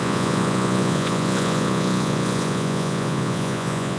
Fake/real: fake